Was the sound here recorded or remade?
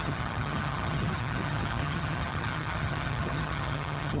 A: remade